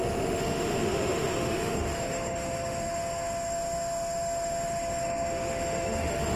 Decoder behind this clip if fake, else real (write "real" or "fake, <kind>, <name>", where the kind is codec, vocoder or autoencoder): fake, autoencoder, DAC-VAE